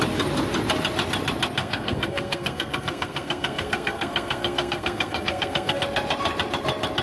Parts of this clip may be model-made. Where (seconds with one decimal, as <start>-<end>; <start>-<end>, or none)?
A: 1.6-5.8